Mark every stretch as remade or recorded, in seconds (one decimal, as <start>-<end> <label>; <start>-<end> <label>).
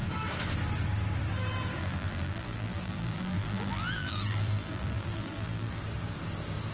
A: 0.0-1.8 recorded; 1.8-5.8 remade; 5.8-6.7 recorded